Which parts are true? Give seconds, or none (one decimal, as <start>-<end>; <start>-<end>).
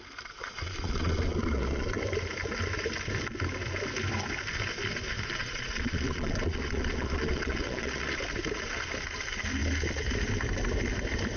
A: 0.0-0.4; 2.0-5.4; 8.2-11.4